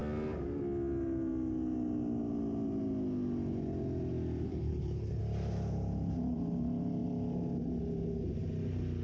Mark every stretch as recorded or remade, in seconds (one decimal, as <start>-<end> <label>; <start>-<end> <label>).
0.0-4.5 recorded; 4.5-5.2 remade; 5.2-9.0 recorded